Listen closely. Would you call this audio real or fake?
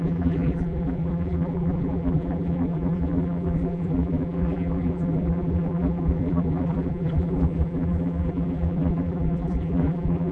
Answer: fake